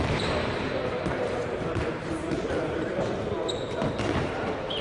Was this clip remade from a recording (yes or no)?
yes